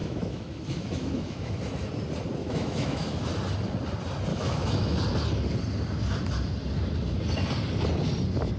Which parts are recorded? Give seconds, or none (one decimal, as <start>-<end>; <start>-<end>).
1.6-2.4; 3.2-4.3; 5.0-8.6